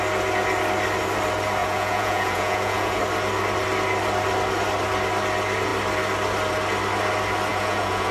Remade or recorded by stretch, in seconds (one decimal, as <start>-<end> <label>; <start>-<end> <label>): 0.0-1.6 recorded; 1.6-3.0 remade; 3.0-7.5 recorded; 7.5-8.1 remade